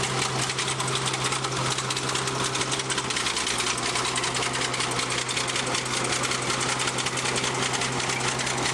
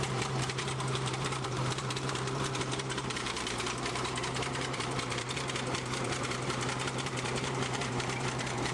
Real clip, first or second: first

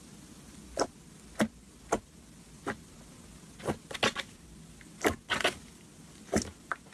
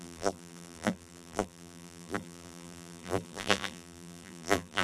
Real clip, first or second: first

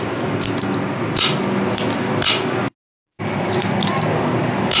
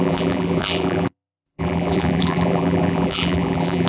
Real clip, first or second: first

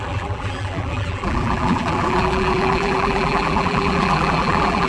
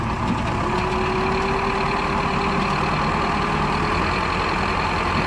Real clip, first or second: second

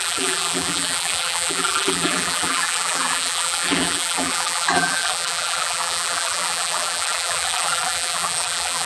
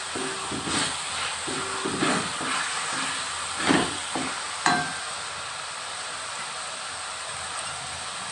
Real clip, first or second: second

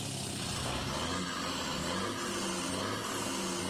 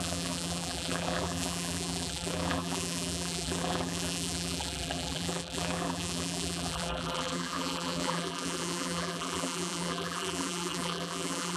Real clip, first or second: first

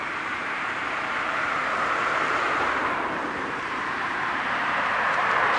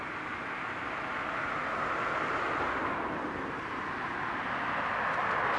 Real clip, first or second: second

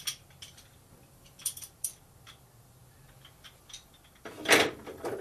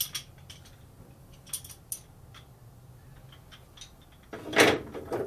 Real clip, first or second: second